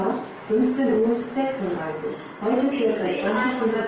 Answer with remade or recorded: remade